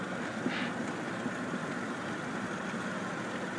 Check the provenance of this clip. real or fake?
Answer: real